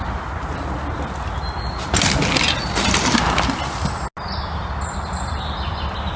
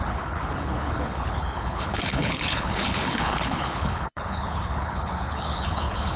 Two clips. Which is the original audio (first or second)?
first